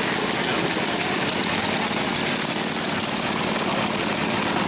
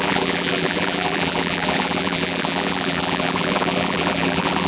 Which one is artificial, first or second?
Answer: second